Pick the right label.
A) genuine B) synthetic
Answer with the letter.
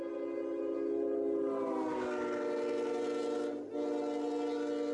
A